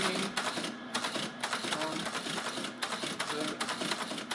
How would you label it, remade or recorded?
recorded